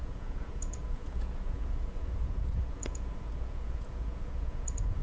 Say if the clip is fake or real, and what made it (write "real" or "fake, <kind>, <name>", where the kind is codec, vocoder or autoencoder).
fake, vocoder, Vocos